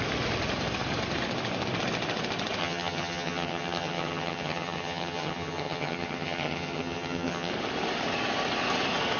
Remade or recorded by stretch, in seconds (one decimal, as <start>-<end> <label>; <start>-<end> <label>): 0.0-2.6 recorded; 2.6-7.5 remade; 7.5-9.2 recorded